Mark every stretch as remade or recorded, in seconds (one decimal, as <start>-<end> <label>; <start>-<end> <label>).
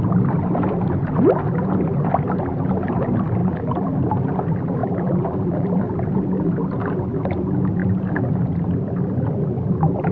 0.0-3.4 recorded; 3.4-4.0 remade; 4.0-4.8 recorded; 4.8-5.8 remade; 5.8-10.1 recorded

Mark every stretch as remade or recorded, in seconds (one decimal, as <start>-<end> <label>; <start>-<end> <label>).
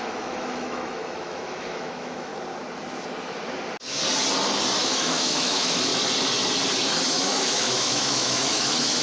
0.0-2.3 remade; 2.3-4.8 recorded; 4.8-5.9 remade; 5.9-7.1 recorded; 7.1-9.0 remade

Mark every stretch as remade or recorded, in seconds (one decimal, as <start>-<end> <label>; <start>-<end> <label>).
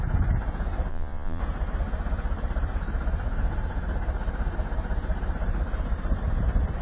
0.0-0.9 recorded; 0.9-1.4 remade; 1.4-6.8 recorded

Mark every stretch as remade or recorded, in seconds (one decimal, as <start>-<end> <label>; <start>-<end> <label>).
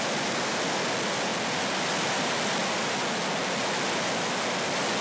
0.0-5.0 recorded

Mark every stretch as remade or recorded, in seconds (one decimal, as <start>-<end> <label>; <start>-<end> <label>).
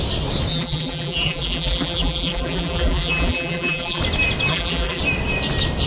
0.0-0.5 recorded; 0.5-4.0 remade; 4.0-4.5 recorded; 4.5-5.0 remade; 5.0-5.9 recorded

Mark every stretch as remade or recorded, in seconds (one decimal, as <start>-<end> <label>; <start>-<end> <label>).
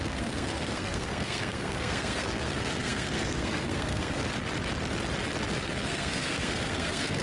0.0-4.2 remade; 4.2-5.6 recorded; 5.6-7.2 remade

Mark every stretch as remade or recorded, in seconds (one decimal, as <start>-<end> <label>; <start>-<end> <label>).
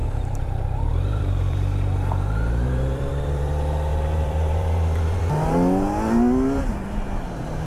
0.0-3.5 remade; 3.5-3.9 recorded; 3.9-5.2 remade; 5.2-7.7 recorded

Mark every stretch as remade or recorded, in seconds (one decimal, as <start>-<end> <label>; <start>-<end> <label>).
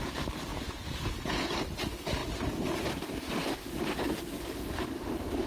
0.0-0.5 recorded; 0.5-1.5 remade; 1.5-5.5 recorded